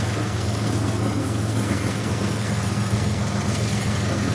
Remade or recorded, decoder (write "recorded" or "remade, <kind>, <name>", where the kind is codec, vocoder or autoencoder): remade, codec, SNAC